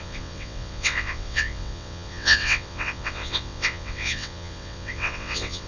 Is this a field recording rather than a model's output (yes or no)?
no